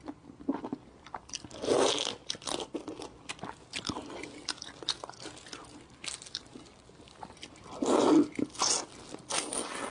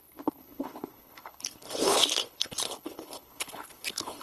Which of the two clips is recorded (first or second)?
first